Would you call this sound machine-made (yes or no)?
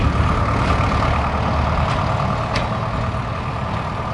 no